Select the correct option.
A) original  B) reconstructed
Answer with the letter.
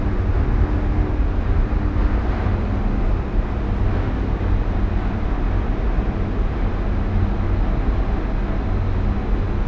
A